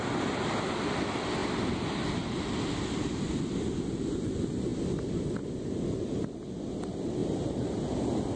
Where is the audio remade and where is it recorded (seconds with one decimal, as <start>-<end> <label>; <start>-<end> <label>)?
0.0-7.2 recorded; 7.2-8.0 remade; 8.0-8.4 recorded